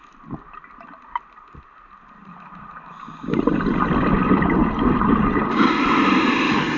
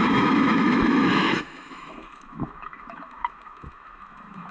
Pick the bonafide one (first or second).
first